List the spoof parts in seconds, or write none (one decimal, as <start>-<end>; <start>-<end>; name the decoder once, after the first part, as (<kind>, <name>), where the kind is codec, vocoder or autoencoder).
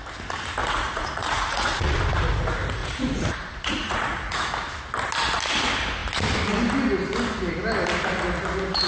0.6-2.0 (vocoder, Vocos); 2.8-4.5